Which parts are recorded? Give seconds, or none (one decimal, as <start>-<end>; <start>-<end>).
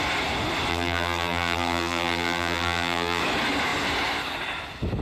0.0-0.7; 3.2-5.0